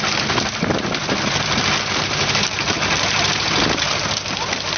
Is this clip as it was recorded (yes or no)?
yes